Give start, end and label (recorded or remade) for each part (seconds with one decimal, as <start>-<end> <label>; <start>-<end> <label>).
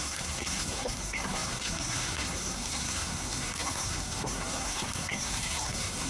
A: 0.0-6.1 remade